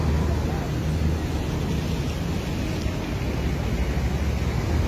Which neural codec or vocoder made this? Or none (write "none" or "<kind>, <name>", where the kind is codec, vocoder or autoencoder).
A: none